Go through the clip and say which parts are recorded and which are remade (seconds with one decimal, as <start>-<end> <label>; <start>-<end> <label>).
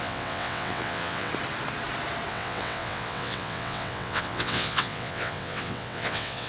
0.0-1.3 remade; 1.3-2.3 recorded; 2.3-6.5 remade